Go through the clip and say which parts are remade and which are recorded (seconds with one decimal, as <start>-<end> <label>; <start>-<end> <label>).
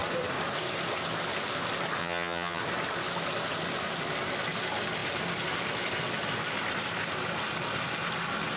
0.0-2.0 recorded; 2.0-2.6 remade; 2.6-8.6 recorded